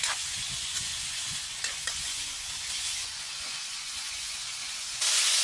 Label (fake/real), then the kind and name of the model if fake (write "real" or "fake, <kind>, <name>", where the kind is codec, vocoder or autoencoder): fake, vocoder, Vocos